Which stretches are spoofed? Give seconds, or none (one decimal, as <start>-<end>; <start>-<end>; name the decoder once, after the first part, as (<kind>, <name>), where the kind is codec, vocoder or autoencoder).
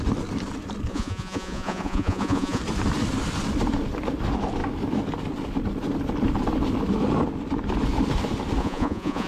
0.9-2.6 (vocoder, Vocos); 8.6-9.3